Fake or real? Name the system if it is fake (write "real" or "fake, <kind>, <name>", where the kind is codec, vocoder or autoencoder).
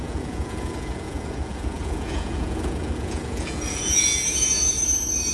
fake, vocoder, Vocos